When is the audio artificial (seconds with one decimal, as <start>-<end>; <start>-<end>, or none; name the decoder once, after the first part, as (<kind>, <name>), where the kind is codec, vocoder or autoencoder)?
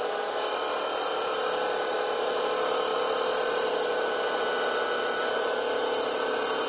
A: 2.9-4.0 (vocoder, BigVGAN v2)